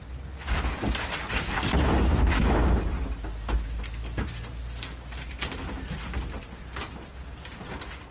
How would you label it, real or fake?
real